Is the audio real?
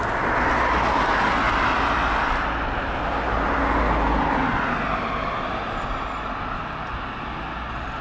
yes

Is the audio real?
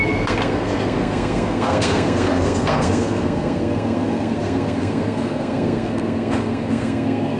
no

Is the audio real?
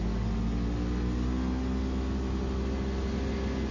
yes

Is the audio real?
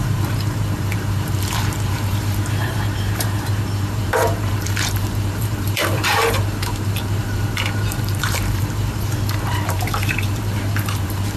no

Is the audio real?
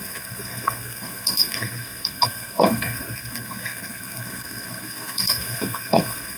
no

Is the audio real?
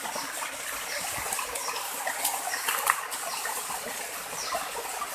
yes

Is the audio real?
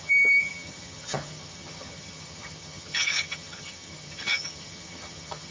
no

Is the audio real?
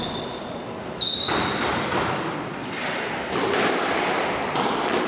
no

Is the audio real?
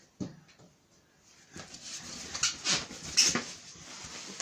yes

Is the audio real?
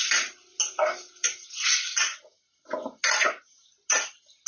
yes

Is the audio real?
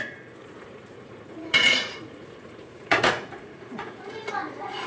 no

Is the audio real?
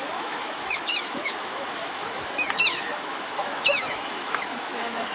no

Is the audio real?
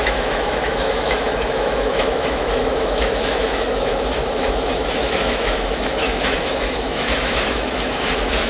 no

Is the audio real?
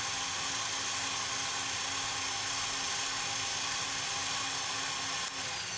yes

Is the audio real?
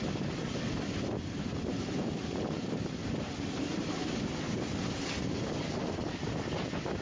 yes